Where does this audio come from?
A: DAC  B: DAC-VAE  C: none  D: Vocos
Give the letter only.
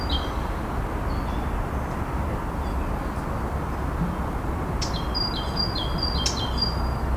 C